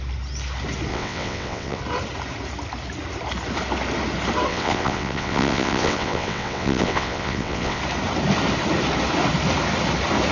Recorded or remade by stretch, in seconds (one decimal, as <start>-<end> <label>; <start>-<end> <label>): 0.0-0.9 recorded; 0.9-1.8 remade; 1.8-4.5 recorded; 4.5-7.8 remade; 7.8-10.3 recorded